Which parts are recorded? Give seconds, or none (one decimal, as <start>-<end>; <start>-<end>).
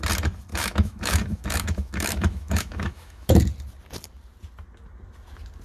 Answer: 0.0-0.5; 3.4-5.6